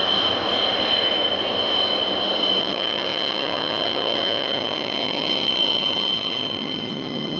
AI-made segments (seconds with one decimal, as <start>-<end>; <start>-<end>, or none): 2.6-7.4